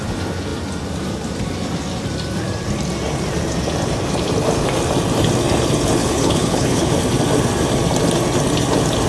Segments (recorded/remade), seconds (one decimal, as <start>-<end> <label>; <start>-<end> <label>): 0.0-6.0 recorded; 6.0-6.9 remade; 6.9-9.1 recorded